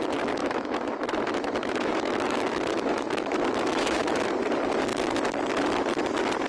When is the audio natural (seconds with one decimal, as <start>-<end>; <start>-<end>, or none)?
0.0-0.4; 4.3-6.5